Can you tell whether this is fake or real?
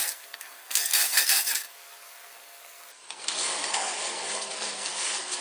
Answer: fake